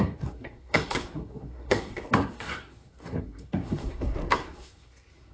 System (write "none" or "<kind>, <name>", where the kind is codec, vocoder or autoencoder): codec, SNAC